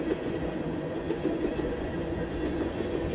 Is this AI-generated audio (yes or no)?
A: yes